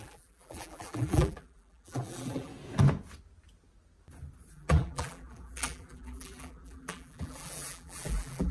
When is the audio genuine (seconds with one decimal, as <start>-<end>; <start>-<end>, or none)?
2.5-4.5